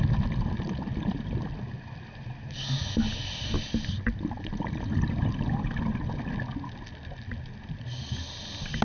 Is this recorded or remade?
recorded